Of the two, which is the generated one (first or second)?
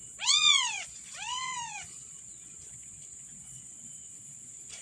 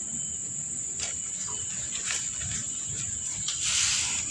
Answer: first